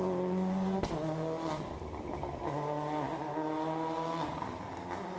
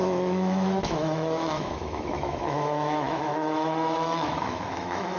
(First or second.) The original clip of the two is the first